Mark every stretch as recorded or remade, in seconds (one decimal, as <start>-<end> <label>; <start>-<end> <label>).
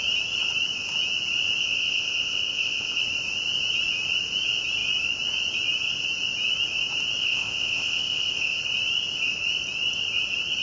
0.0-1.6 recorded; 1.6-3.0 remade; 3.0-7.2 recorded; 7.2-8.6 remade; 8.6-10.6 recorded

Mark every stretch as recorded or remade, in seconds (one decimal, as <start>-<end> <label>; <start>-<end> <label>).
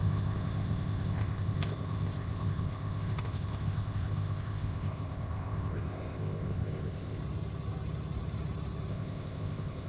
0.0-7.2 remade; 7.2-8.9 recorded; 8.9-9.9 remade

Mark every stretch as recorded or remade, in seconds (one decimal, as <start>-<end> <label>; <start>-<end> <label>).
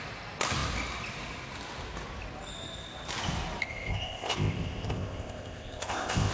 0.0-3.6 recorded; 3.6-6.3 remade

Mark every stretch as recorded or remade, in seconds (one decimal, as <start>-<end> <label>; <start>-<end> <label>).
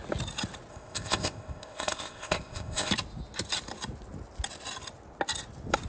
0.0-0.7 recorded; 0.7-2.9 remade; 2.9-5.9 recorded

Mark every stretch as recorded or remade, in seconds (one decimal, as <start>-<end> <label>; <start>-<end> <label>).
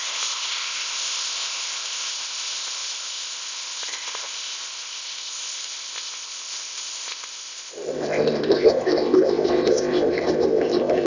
0.0-11.1 remade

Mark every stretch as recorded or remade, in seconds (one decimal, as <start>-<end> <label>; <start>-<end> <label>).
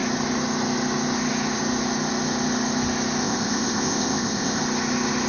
0.0-3.2 recorded; 3.2-4.6 remade; 4.6-5.3 recorded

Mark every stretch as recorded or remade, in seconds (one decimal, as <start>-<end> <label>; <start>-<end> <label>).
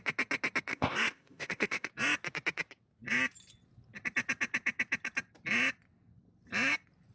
0.0-0.7 recorded; 0.7-1.9 remade; 1.9-7.1 recorded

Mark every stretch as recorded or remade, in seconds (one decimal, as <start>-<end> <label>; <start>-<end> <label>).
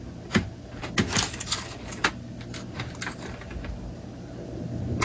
0.0-5.0 recorded